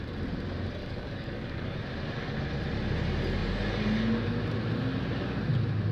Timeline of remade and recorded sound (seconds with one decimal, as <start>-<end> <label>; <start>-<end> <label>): 0.0-0.8 recorded; 0.8-1.8 remade; 1.8-5.9 recorded